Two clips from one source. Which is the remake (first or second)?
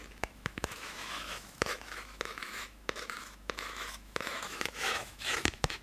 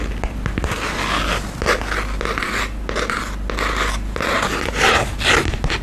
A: first